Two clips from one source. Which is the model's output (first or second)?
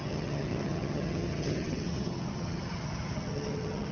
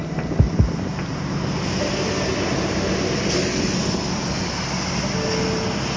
first